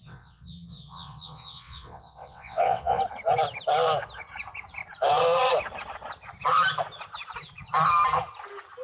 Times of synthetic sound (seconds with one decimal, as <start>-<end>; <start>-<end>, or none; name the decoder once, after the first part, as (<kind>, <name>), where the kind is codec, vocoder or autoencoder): 0.0-3.0 (vocoder, WaveNeXt)